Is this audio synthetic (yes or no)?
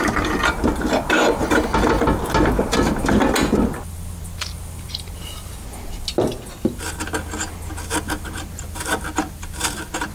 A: no